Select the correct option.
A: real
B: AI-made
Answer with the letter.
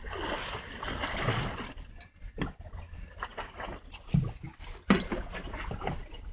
A